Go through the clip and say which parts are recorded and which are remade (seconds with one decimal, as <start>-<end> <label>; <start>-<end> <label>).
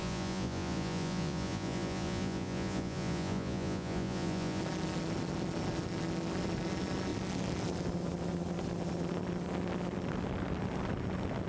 0.0-4.6 remade; 4.6-11.5 recorded